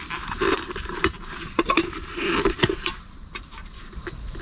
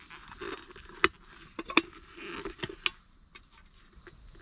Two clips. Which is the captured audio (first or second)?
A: second